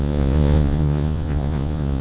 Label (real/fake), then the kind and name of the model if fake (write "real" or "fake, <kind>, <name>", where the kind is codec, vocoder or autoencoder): fake, vocoder, Vocos